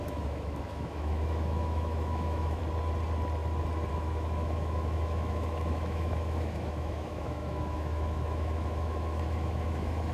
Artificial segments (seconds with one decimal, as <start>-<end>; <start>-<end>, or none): 0.0-2.6; 3.9-10.1